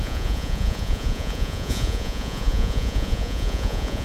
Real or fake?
fake